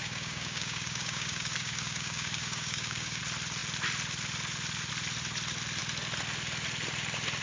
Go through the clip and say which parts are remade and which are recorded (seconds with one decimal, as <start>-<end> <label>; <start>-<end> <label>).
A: 0.0-3.2 remade; 3.2-7.4 recorded